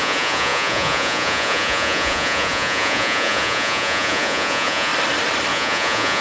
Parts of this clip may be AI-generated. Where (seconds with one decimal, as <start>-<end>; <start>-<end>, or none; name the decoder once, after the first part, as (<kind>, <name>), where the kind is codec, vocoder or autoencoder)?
0.0-4.9 (vocoder, Vocos); 5.5-6.2